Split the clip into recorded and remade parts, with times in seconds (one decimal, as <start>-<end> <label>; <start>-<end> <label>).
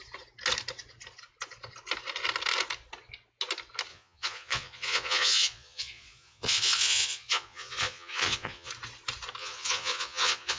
0.0-3.9 recorded; 3.9-8.7 remade; 8.7-9.4 recorded; 9.4-10.6 remade